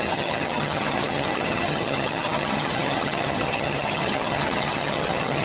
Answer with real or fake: fake